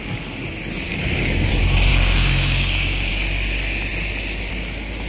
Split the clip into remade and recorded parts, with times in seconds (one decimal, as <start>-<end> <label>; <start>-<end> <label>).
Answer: 0.0-0.9 recorded; 0.9-1.5 remade; 1.5-1.9 recorded; 1.9-3.1 remade; 3.1-5.1 recorded